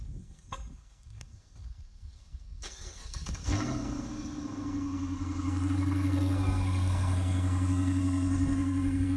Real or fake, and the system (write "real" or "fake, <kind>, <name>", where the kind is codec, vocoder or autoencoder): fake, codec, SNAC